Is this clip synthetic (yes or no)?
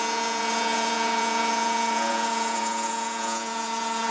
yes